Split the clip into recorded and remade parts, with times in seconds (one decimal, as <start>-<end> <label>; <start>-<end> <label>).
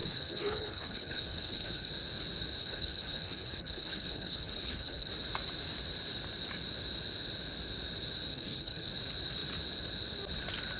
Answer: 0.0-1.9 remade; 1.9-2.6 recorded; 2.6-5.1 remade; 5.1-8.3 recorded; 8.3-8.9 remade; 8.9-10.8 recorded